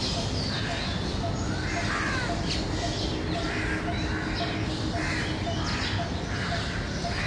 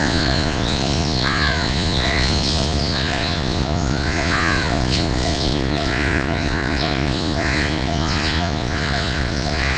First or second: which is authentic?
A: first